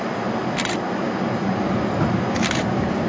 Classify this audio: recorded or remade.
recorded